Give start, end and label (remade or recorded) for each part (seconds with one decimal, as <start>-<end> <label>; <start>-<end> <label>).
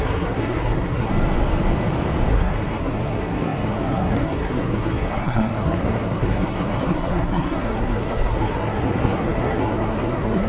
0.0-1.1 remade; 1.1-2.3 recorded; 2.3-10.5 remade